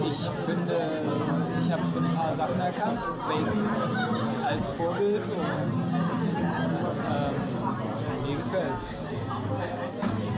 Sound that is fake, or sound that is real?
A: real